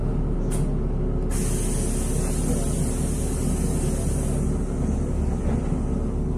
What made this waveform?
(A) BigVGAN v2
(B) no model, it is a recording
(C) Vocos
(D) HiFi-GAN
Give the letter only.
B